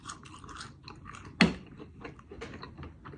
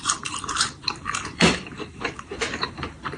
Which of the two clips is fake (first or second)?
second